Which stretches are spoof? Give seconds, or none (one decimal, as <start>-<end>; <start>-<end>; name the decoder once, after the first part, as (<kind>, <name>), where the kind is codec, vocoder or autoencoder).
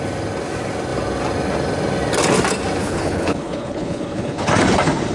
2.8-4.5 (codec, HILCodec)